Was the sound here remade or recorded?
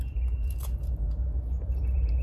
remade